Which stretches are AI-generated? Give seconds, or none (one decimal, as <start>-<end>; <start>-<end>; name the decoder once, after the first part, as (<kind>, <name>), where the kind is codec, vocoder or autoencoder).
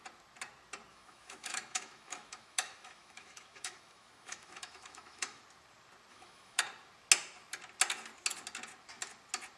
0.9-5.4 (autoencoder, DAC-VAE); 6.1-6.6